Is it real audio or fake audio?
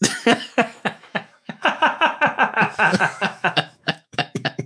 fake